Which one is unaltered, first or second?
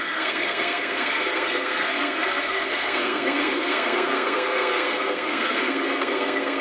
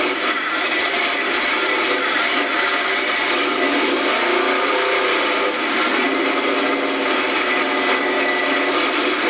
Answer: second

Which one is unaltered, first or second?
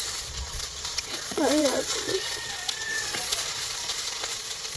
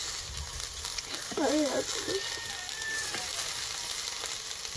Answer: second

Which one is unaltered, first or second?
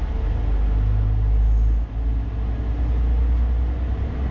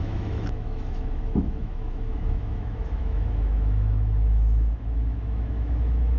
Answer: first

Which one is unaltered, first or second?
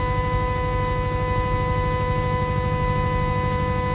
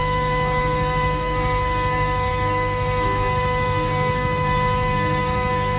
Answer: first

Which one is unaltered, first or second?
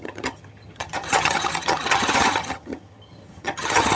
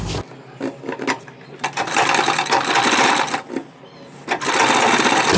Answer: second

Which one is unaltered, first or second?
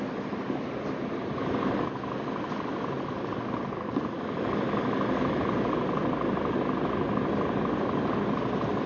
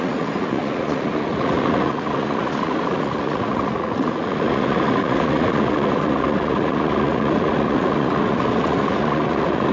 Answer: first